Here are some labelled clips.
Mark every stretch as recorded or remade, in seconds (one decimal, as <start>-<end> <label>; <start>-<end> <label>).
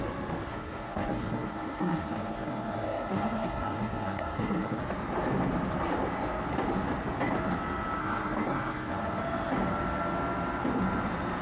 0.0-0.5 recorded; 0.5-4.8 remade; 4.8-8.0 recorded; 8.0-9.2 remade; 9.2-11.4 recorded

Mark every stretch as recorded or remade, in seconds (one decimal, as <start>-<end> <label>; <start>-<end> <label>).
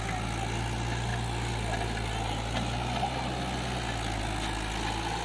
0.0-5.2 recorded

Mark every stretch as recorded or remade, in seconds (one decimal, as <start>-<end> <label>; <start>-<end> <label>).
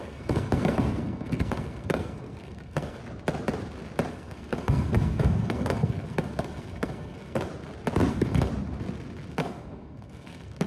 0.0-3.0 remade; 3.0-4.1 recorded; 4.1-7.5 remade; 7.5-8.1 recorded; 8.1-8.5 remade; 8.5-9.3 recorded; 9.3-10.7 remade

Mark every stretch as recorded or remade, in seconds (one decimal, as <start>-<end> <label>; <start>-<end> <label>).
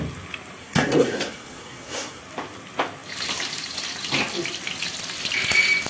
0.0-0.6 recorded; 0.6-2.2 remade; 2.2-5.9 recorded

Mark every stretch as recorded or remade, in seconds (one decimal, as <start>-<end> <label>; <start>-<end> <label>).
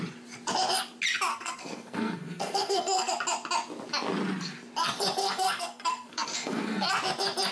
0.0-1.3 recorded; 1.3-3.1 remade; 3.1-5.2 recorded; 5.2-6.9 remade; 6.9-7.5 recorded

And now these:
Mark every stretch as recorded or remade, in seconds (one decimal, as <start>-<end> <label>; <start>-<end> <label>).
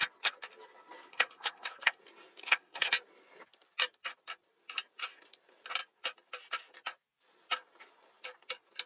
0.0-1.1 recorded; 1.1-2.0 remade; 2.0-2.4 recorded; 2.4-2.9 remade; 2.9-8.9 recorded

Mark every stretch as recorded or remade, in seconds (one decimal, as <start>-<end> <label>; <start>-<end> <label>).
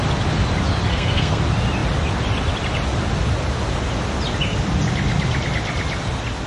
0.0-0.9 recorded; 0.9-1.4 remade; 1.4-6.5 recorded